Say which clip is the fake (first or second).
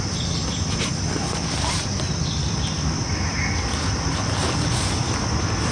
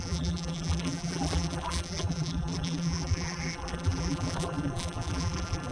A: second